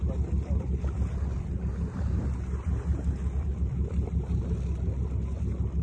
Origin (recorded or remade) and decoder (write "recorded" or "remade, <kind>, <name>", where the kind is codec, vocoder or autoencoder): recorded